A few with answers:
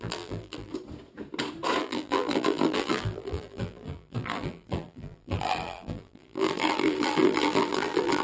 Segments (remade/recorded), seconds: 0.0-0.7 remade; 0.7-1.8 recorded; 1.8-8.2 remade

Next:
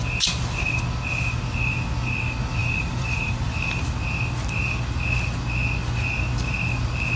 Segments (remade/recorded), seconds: 0.0-2.6 recorded; 2.6-3.8 remade; 3.8-7.2 recorded

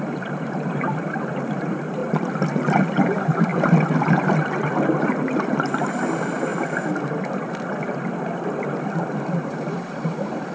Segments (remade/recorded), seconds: 0.0-2.0 remade; 2.0-3.1 recorded; 3.1-3.5 remade; 3.5-4.1 recorded; 4.1-6.5 remade; 6.5-9.4 recorded; 9.4-10.5 remade